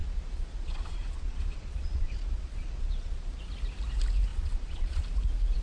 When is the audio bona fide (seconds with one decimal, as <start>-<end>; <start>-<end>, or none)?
3.4-4.3; 5.0-5.6

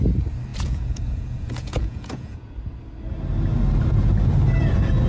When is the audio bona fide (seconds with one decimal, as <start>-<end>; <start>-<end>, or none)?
0.0-0.5; 2.5-5.1

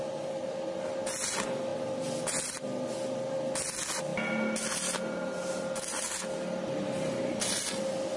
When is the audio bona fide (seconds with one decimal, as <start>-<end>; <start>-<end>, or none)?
0.0-8.2

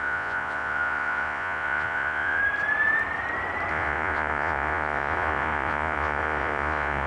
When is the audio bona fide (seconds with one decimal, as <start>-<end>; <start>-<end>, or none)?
2.4-3.7

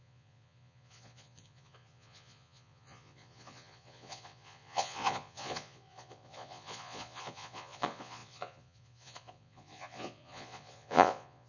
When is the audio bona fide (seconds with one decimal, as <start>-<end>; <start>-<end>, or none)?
none

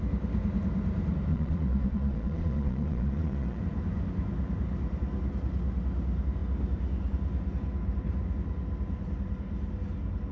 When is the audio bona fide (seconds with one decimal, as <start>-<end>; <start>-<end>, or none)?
0.0-1.3; 3.6-10.3

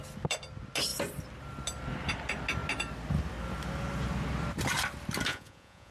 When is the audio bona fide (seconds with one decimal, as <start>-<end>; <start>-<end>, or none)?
0.0-5.3

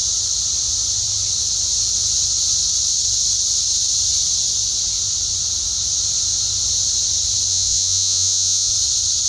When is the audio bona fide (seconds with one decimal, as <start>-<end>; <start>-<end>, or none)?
0.0-7.5; 8.7-9.3